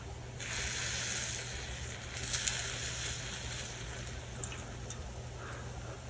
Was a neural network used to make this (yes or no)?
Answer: no